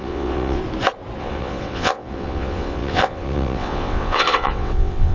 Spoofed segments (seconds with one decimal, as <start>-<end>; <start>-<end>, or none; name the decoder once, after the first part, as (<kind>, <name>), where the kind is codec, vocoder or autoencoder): 0.0-0.6 (vocoder, WaveNeXt); 1.2-5.1